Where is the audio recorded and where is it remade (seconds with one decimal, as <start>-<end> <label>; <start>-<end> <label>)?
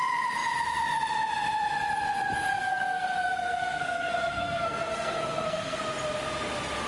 0.0-2.5 recorded; 2.5-5.8 remade; 5.8-6.9 recorded